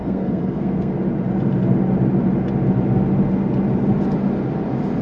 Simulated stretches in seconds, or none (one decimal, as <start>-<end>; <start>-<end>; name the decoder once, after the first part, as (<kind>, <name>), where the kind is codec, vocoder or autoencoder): 0.0-0.9 (codec, SNAC)